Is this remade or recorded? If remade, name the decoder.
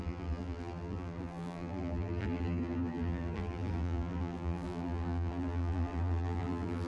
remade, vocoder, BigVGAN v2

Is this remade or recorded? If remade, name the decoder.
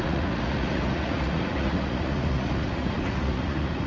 remade, vocoder, Vocos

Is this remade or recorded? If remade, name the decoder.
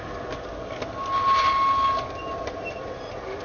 recorded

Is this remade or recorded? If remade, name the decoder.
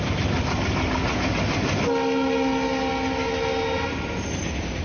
recorded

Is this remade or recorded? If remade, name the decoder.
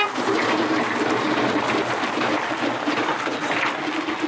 recorded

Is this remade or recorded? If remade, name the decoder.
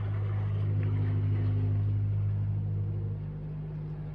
recorded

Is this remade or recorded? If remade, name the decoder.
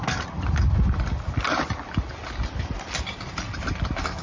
recorded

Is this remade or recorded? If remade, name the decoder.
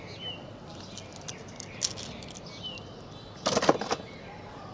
recorded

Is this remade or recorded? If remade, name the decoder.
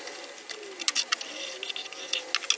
recorded